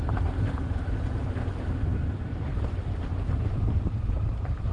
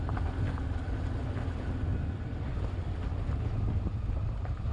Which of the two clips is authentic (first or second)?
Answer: second